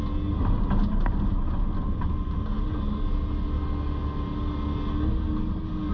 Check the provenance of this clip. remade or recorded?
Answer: recorded